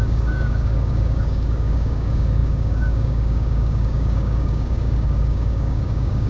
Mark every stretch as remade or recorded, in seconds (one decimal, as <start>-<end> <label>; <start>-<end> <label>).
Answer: 0.0-6.3 remade